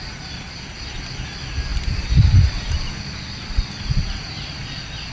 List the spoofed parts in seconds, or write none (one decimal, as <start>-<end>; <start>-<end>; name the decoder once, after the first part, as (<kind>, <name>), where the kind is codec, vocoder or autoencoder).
none